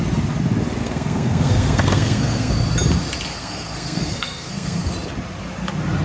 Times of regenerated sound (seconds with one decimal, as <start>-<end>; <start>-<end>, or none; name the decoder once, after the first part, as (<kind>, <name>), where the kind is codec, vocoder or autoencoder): 0.8-2.5 (codec, SNAC); 3.3-4.9